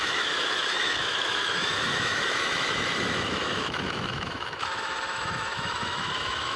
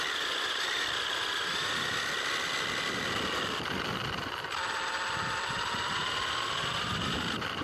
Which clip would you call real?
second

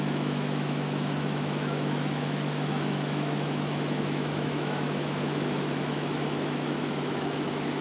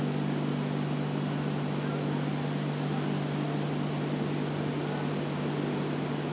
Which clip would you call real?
second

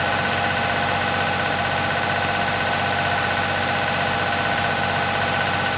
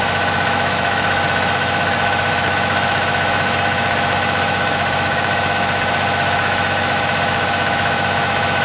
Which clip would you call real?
first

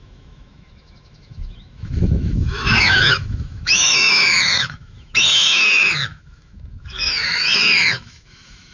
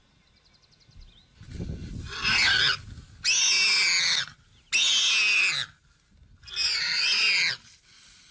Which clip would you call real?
second